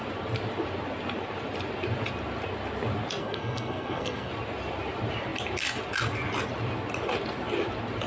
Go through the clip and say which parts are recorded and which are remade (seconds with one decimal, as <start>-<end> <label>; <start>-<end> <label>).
0.0-3.2 recorded; 3.2-4.3 remade; 4.3-8.1 recorded